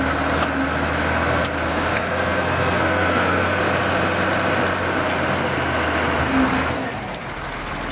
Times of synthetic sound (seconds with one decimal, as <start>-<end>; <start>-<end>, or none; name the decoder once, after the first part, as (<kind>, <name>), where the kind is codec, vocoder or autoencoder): 1.7-3.6 (codec, SNAC); 6.2-6.7